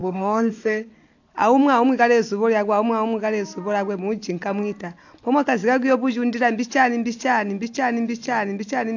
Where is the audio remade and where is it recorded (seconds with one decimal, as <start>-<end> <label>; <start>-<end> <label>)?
0.0-0.9 remade; 0.9-9.0 recorded